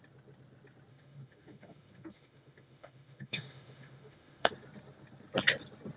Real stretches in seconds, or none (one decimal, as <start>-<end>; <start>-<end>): 0.0-0.9; 4.5-6.0